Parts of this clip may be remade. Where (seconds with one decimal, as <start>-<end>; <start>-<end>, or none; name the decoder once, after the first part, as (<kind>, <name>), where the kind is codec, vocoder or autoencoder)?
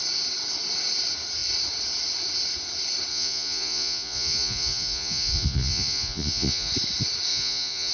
3.1-6.7 (vocoder, Vocos); 7.3-7.9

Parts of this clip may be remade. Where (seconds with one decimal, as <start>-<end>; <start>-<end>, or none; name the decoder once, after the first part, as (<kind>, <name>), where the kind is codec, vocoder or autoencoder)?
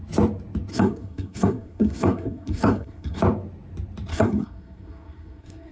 0.7-3.2 (codec, SNAC); 4.1-5.7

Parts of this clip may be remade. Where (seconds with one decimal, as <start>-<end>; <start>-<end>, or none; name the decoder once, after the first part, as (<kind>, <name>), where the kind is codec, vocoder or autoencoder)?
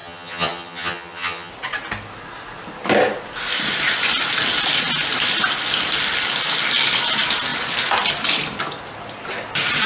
0.0-1.5 (vocoder, HiFi-GAN)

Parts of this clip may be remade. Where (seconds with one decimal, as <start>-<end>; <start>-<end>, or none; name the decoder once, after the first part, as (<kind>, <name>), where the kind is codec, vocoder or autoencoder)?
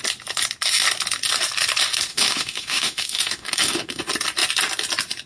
2.1-4.0 (autoencoder, DAC-VAE)